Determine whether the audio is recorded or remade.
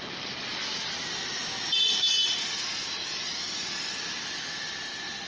recorded